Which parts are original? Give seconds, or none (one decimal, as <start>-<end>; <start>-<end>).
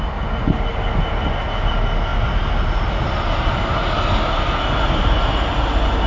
0.0-6.1